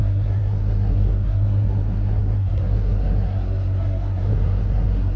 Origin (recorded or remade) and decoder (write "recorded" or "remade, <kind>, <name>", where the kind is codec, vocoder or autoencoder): remade, codec, SNAC